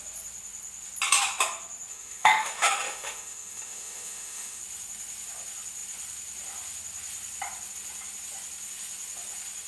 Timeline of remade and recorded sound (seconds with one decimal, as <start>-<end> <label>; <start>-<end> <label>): 0.0-1.9 recorded; 1.9-4.6 remade; 4.6-9.7 recorded